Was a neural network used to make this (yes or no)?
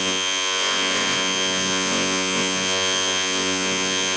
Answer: yes